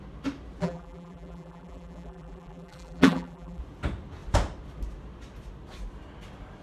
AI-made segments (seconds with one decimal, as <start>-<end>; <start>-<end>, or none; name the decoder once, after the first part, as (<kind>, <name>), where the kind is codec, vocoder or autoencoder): 0.6-3.6 (vocoder, BigVGAN v2)